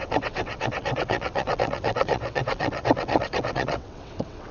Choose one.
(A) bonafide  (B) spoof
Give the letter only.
B